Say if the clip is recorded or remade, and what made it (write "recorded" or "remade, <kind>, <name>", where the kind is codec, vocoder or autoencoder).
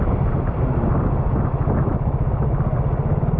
recorded